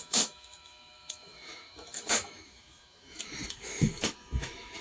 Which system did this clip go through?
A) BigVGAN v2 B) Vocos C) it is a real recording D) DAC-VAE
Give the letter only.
D